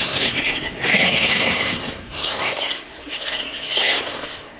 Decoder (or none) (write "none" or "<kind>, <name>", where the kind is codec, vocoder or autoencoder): codec, SNAC